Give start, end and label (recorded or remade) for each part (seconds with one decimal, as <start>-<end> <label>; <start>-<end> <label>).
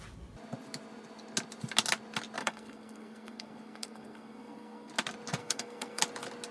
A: 0.0-2.4 recorded; 2.4-4.9 remade; 4.9-5.4 recorded; 5.4-6.0 remade; 6.0-6.5 recorded